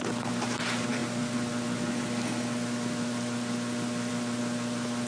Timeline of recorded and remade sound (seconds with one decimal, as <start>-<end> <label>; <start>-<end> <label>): 0.0-5.1 recorded